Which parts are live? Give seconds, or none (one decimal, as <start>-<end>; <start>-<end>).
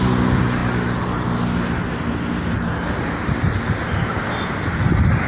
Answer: 0.0-5.3